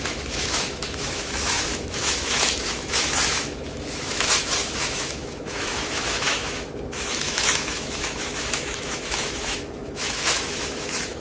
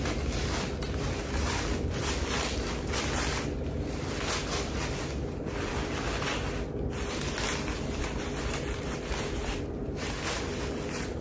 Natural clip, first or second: second